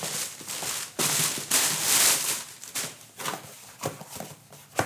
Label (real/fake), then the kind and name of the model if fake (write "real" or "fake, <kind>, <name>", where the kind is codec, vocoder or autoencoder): real